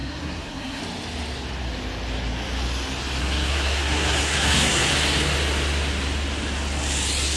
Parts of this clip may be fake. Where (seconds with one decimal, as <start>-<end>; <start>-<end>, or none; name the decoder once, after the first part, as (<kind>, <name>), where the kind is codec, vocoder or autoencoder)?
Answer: 0.0-0.8 (codec, SNAC); 3.2-4.9